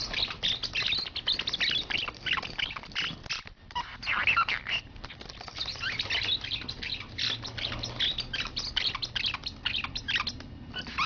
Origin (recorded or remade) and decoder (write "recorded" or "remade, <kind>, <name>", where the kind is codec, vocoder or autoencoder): recorded